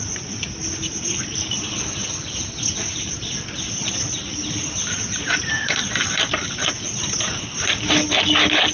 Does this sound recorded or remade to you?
recorded